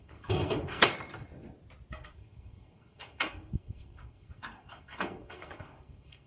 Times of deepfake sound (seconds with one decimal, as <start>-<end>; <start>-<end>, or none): 0.0-0.9; 1.9-6.3